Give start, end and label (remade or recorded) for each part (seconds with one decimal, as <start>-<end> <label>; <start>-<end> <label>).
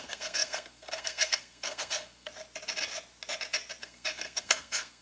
0.0-2.3 remade; 2.3-3.8 recorded; 3.8-5.0 remade